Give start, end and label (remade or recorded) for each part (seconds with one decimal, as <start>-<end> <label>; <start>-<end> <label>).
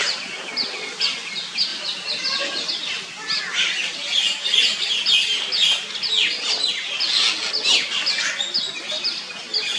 0.0-9.8 recorded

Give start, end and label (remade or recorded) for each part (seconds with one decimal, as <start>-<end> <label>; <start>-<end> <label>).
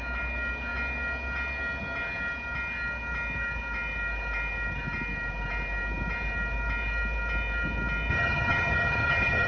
0.0-8.1 recorded; 8.1-9.5 remade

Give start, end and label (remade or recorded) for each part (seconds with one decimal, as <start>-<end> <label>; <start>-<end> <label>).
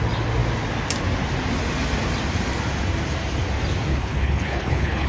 0.0-3.9 recorded; 3.9-5.1 remade